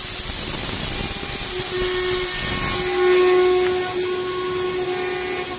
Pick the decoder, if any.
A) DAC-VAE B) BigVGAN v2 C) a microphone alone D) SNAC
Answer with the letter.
C